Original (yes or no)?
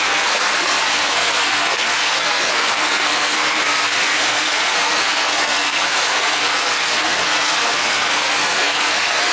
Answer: no